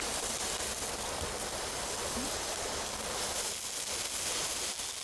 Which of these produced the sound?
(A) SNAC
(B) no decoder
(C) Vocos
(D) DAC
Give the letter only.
B